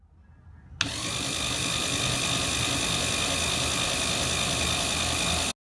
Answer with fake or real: real